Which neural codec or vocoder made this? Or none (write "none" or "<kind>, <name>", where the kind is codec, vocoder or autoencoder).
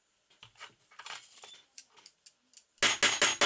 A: none